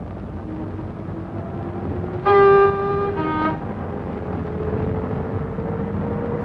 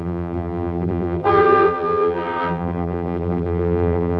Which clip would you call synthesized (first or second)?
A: second